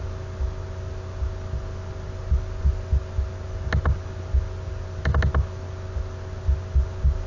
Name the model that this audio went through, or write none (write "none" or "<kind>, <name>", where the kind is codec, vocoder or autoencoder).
none